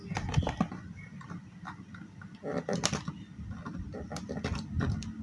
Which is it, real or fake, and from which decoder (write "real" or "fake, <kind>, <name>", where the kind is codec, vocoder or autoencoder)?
real